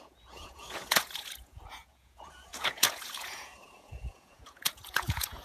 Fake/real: fake